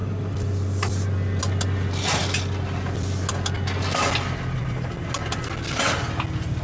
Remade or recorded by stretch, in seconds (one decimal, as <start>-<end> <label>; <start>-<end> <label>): 0.0-6.6 recorded